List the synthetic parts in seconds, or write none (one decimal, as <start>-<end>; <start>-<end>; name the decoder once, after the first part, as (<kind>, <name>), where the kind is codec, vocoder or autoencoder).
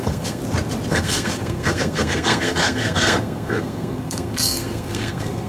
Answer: 0.0-0.4 (codec, SNAC); 0.9-5.5